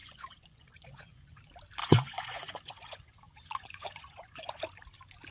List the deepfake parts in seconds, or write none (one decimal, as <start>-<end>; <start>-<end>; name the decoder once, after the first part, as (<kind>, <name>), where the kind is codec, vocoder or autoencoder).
0.0-1.4 (vocoder, Vocos); 1.8-4.6